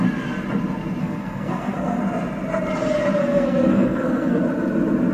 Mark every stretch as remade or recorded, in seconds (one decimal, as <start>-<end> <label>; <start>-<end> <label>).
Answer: 0.0-1.0 recorded; 1.0-2.0 remade; 2.0-3.2 recorded; 3.2-4.4 remade; 4.4-5.1 recorded

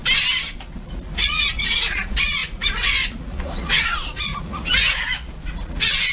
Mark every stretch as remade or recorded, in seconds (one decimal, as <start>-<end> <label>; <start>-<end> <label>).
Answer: 0.0-0.6 recorded; 0.6-6.1 remade